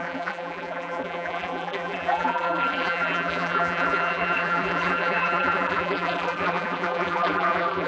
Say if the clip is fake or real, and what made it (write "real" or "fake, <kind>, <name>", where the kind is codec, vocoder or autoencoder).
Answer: fake, vocoder, BigVGAN v2